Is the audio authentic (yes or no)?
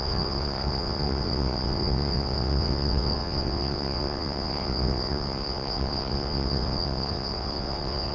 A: no